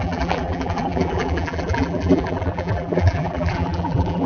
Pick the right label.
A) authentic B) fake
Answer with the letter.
B